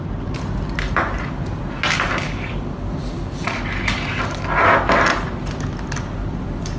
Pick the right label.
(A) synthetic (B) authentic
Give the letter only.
B